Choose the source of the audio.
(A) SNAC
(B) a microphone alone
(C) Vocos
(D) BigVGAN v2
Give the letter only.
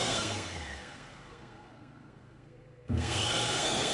A